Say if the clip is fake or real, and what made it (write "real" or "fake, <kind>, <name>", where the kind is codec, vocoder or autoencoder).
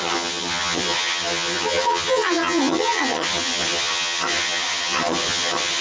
fake, vocoder, HiFi-GAN